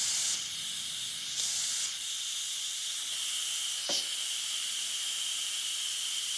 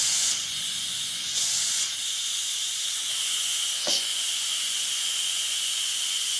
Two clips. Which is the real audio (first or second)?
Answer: first